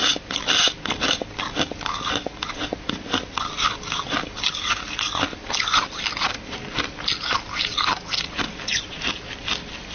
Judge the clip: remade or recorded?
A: recorded